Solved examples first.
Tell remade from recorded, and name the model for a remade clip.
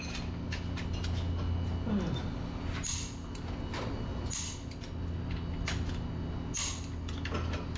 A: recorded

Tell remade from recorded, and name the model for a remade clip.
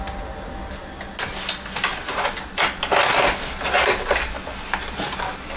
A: recorded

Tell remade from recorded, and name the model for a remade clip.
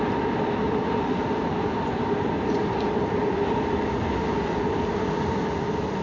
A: recorded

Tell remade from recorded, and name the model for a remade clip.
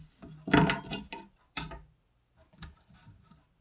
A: recorded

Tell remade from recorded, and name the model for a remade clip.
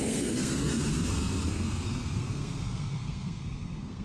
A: remade, codec, SNAC